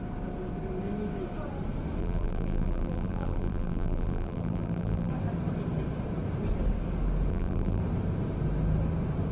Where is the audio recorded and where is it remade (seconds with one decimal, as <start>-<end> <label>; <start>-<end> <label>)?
0.0-2.0 recorded; 2.0-5.1 remade; 5.1-7.3 recorded; 7.3-7.8 remade; 7.8-9.3 recorded